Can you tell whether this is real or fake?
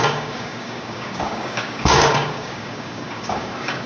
fake